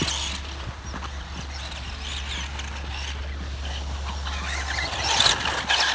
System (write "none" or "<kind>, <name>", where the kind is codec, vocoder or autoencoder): none